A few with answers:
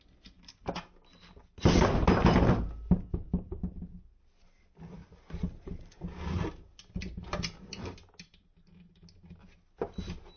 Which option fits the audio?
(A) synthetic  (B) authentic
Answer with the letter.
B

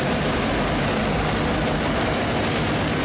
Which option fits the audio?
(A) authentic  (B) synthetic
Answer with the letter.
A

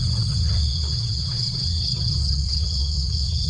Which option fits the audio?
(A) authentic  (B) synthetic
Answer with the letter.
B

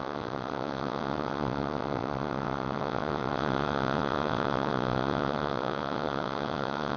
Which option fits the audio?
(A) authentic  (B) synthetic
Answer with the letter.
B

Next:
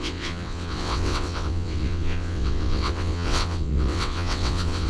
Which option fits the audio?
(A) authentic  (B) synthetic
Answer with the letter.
B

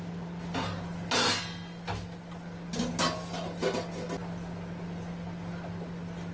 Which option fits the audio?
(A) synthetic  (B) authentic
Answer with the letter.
B